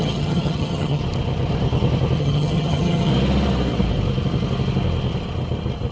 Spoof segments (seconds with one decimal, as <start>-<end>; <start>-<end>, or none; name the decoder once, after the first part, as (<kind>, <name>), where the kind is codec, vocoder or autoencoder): 0.0-1.0 (vocoder, HiFi-GAN); 2.2-3.1